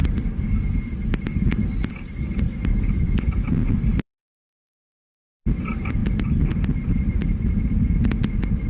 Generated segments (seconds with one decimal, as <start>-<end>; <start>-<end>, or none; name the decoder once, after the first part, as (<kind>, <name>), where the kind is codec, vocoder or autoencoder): 2.7-3.5 (autoencoder, DAC-VAE)

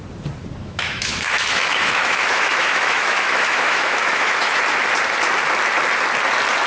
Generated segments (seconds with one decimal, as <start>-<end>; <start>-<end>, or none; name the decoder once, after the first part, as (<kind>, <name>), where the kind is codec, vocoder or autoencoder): 0.6-4.6 (autoencoder, DAC-VAE)

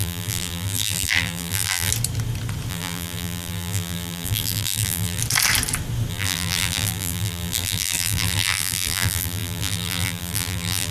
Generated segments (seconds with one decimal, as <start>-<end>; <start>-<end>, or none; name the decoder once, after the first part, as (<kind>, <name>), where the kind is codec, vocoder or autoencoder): 0.0-1.9 (vocoder, BigVGAN v2); 2.7-5.2; 6.1-10.9

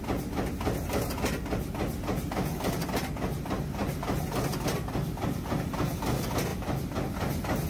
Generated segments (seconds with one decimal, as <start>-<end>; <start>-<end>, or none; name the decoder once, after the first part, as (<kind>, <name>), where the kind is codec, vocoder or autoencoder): none

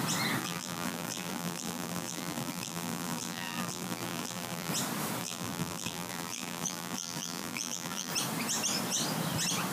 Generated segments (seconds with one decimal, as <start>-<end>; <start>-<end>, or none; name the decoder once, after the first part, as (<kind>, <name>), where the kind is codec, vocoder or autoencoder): 0.4-4.7 (vocoder, BigVGAN v2); 5.2-8.1

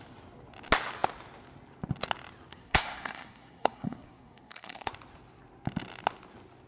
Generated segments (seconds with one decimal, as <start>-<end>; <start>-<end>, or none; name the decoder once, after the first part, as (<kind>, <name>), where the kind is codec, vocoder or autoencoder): 2.5-4.9 (codec, SNAC)

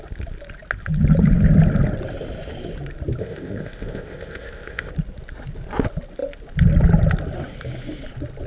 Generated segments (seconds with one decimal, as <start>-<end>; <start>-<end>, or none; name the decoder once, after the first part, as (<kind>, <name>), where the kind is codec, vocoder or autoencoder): 3.2-4.9 (codec, ZipCodec)

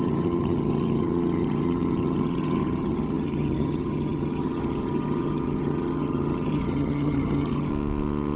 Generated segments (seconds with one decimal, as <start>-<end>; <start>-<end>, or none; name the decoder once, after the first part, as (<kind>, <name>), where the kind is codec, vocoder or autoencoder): 0.0-7.7 (vocoder, HiFi-GAN)